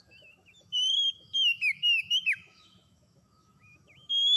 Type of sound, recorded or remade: remade